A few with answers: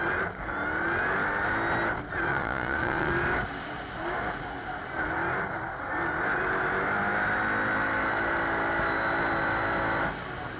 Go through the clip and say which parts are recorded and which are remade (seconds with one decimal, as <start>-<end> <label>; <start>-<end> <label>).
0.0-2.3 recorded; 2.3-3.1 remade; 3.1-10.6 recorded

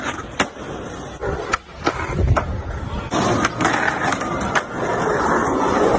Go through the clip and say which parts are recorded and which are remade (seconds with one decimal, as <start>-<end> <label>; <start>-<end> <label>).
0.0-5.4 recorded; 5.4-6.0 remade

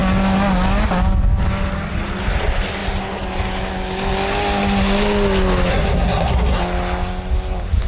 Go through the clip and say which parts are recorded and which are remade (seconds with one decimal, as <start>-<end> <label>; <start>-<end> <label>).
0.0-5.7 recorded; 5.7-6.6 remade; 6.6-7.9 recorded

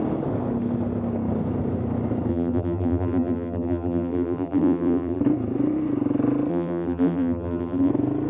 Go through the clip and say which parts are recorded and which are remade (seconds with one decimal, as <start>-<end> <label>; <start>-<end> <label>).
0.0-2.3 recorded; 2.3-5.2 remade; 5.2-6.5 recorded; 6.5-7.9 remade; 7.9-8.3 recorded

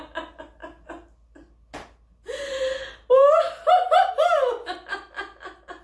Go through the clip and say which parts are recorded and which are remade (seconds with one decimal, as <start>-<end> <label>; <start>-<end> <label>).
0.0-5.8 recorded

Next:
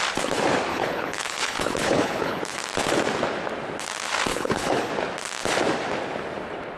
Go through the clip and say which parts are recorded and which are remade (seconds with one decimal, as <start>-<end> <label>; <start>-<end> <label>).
0.0-0.7 recorded; 0.7-2.4 remade; 2.4-4.3 recorded; 4.3-4.9 remade; 4.9-6.8 recorded

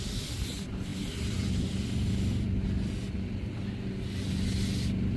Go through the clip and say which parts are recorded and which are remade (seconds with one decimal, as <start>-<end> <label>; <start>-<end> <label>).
0.0-5.2 recorded